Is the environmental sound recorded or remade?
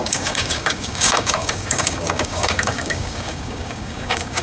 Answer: remade